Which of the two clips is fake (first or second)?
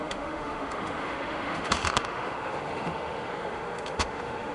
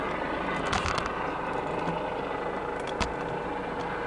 first